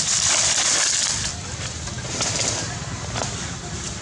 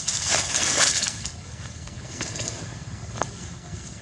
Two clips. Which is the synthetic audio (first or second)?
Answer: second